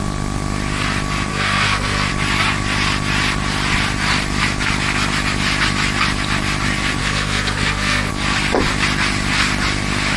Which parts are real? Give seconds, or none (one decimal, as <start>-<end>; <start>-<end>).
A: 0.0-1.3; 2.1-7.0; 8.1-10.2